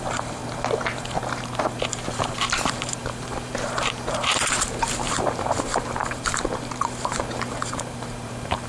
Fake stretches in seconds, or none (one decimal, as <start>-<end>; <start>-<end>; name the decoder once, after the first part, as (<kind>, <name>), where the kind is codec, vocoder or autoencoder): 0.0-0.4 (vocoder, BigVGAN v2); 1.2-8.7